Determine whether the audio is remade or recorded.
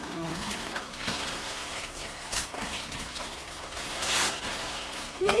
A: remade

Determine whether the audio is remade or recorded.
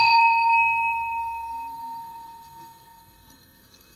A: remade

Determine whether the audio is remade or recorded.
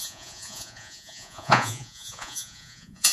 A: remade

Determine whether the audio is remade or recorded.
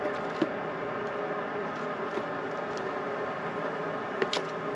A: recorded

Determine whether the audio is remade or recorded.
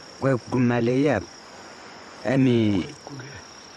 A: remade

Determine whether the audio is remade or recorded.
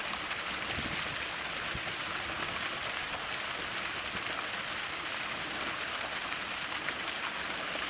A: recorded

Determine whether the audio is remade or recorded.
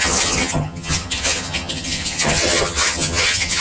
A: remade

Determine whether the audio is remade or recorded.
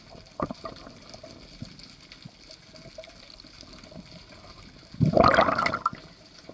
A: recorded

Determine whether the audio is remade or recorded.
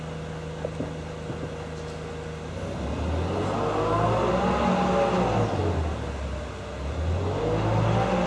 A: recorded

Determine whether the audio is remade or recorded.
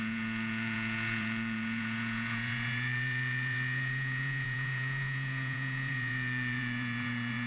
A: remade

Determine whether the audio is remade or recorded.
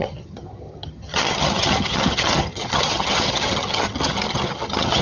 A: remade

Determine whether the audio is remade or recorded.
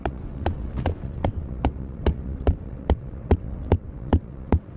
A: remade